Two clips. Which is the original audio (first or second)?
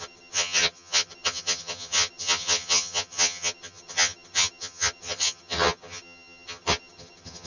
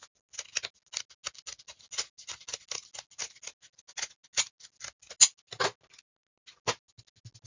second